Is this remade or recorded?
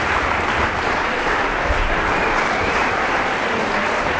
remade